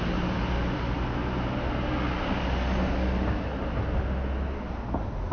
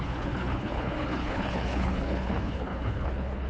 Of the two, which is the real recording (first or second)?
first